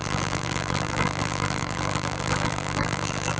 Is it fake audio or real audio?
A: fake